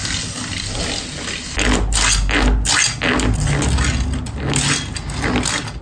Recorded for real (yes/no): yes